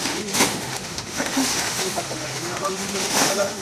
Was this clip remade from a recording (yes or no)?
yes